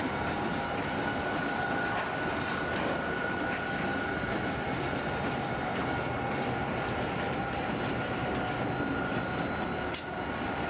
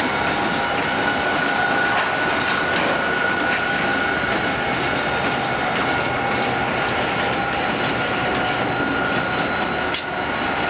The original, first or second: second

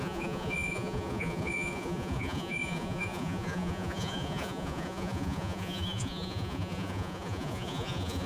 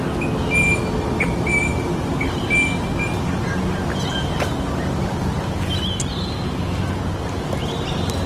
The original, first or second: second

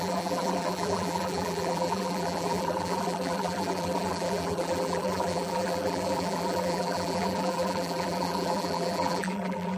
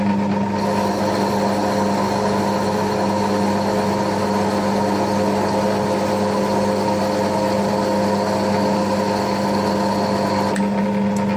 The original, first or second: second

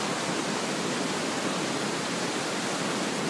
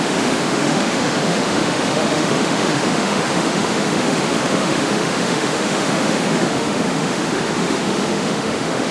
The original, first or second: first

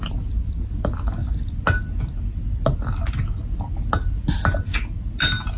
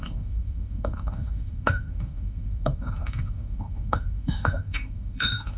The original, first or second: first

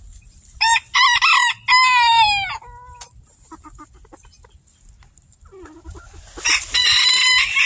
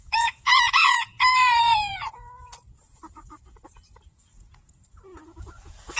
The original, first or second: first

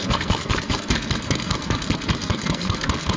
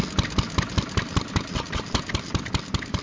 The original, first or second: second